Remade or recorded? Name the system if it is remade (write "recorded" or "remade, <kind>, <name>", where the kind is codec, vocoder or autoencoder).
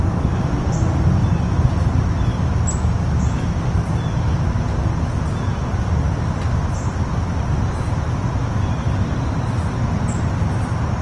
recorded